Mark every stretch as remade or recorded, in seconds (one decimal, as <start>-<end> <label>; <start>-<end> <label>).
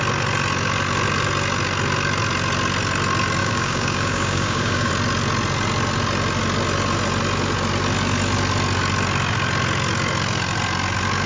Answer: 0.0-3.4 recorded; 3.4-4.9 remade; 4.9-11.3 recorded